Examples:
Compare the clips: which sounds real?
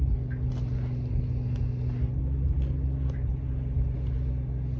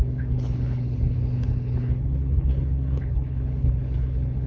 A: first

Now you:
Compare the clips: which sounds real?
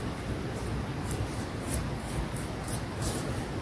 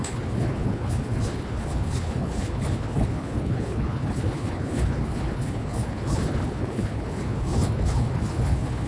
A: first